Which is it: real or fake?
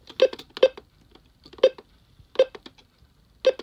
real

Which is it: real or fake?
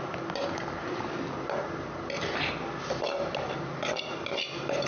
real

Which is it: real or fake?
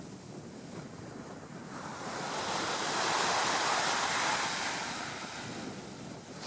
real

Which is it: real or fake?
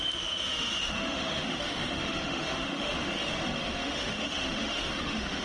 fake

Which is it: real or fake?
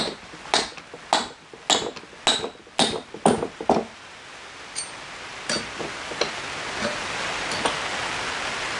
real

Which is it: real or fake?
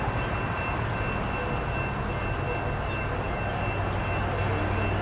real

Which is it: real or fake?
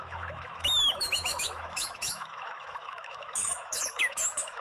fake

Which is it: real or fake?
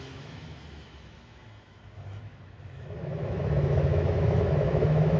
fake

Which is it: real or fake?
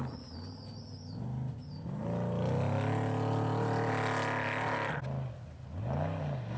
real